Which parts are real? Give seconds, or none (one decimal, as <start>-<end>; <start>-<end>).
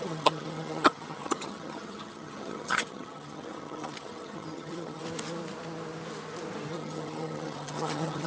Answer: 5.0-6.7